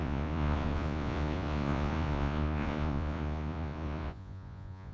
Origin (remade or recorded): remade